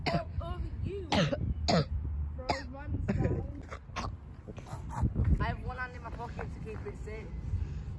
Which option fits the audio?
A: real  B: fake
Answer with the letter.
A